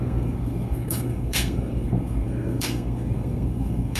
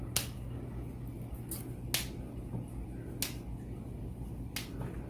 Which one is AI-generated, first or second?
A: first